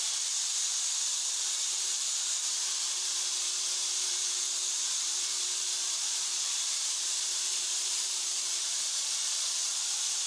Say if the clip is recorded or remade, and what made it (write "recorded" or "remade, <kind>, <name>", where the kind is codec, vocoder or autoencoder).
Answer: remade, vocoder, BigVGAN v2